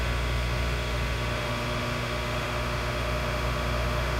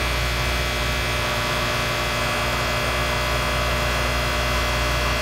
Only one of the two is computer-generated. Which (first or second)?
first